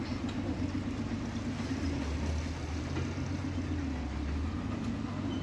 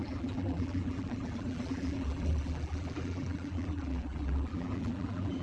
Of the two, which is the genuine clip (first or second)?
first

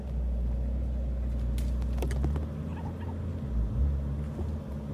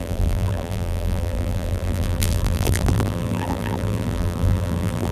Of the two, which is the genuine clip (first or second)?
first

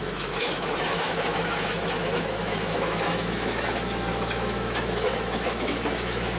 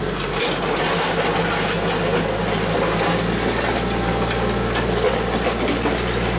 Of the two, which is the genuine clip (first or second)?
second